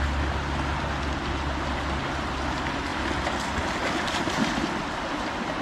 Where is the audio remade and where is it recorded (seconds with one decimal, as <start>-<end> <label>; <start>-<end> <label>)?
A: 0.0-5.6 recorded